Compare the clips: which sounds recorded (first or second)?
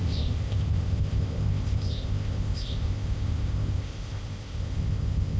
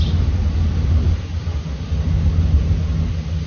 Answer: second